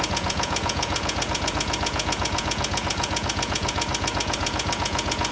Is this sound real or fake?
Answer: fake